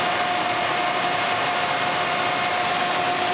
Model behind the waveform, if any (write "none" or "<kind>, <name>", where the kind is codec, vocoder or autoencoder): none